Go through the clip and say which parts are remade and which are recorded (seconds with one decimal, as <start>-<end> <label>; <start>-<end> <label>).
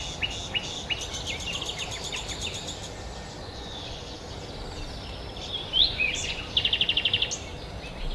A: 0.0-3.4 recorded; 3.4-4.2 remade; 4.2-5.6 recorded; 5.6-6.4 remade; 6.4-8.1 recorded